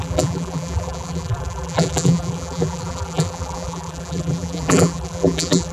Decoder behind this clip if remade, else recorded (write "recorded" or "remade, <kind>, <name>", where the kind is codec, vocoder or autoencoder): remade, vocoder, BigVGAN v2